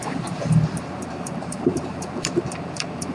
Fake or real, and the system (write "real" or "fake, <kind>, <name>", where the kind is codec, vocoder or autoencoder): fake, vocoder, BigVGAN v2